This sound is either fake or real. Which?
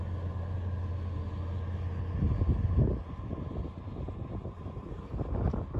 real